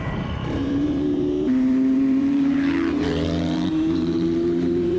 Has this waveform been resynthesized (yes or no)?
yes